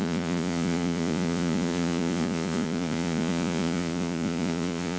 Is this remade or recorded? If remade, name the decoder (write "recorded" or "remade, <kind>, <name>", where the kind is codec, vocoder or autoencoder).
remade, vocoder, Vocos